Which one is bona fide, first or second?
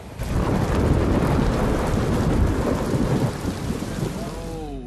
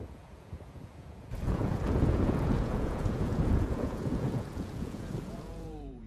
first